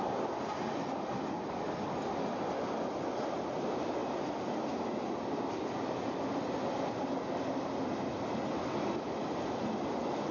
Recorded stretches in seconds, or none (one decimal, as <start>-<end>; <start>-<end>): 0.0-10.3